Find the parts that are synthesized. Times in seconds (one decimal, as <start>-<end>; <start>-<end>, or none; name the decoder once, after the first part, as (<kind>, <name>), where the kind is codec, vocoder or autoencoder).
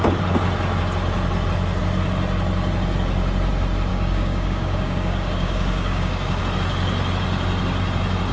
3.9-6.4 (codec, DAC)